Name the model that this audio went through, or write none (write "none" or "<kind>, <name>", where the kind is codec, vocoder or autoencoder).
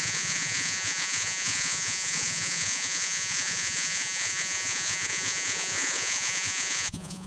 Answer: vocoder, Vocos